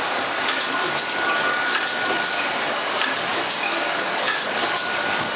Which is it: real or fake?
fake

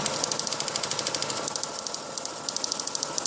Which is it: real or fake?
real